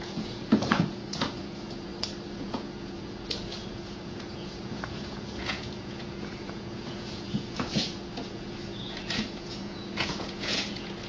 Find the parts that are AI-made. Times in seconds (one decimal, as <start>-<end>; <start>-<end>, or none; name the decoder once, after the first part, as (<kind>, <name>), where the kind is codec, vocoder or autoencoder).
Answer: 0.0-1.9 (vocoder, Vocos); 2.4-11.1